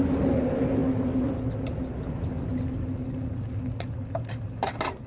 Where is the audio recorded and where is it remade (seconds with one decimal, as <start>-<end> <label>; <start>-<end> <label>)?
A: 0.0-5.1 recorded